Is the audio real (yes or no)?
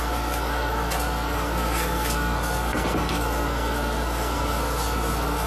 no